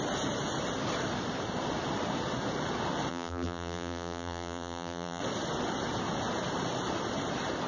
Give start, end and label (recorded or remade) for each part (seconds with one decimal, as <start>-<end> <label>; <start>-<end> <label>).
0.0-3.1 recorded; 3.1-5.2 remade; 5.2-7.7 recorded